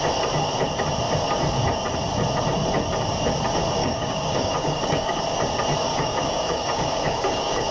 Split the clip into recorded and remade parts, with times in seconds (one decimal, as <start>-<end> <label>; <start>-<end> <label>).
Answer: 0.0-3.8 recorded; 3.8-5.2 remade; 5.2-5.9 recorded; 5.9-7.7 remade